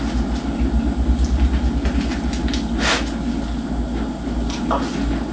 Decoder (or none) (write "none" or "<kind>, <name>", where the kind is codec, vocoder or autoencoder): none